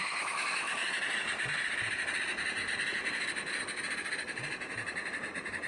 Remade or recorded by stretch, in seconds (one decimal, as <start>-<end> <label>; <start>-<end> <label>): 0.0-1.0 remade; 1.0-5.7 recorded